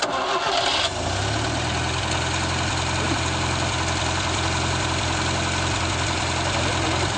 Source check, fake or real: real